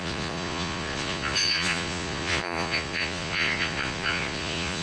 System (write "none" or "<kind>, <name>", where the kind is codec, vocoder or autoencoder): vocoder, Vocos